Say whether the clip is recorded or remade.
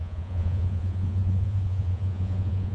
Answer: remade